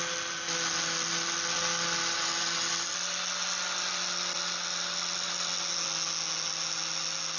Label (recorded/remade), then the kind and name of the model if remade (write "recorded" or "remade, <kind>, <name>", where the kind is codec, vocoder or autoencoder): recorded